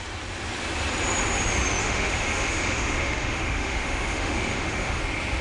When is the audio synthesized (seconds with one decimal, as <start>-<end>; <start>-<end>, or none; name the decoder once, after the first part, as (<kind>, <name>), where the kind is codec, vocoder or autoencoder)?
1.8-5.0 (autoencoder, DAC-VAE)

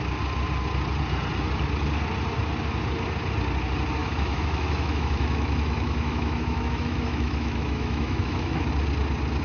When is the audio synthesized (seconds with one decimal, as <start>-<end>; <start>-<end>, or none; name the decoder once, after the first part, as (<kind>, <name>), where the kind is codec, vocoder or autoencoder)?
4.0-8.7 (autoencoder, DAC-VAE)

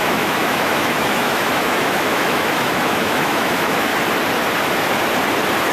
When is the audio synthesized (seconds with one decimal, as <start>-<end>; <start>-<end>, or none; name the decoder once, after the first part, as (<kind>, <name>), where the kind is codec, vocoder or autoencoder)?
0.0-3.9 (autoencoder, DAC-VAE)